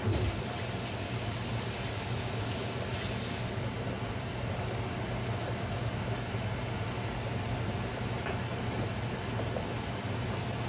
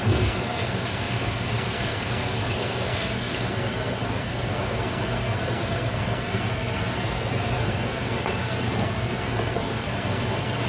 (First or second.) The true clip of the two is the first